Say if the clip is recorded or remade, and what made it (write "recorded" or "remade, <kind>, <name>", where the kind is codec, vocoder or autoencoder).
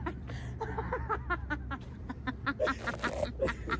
recorded